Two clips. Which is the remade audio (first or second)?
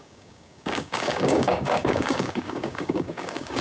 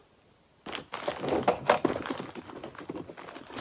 first